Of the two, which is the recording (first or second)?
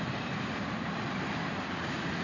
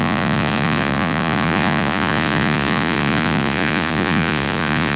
first